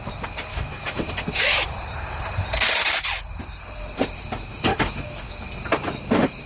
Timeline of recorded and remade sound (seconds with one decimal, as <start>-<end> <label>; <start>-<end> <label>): 0.0-0.5 recorded; 0.5-1.7 remade; 1.7-4.7 recorded; 4.7-5.4 remade; 5.4-6.5 recorded